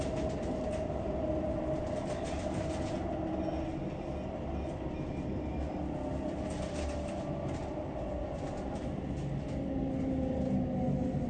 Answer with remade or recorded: recorded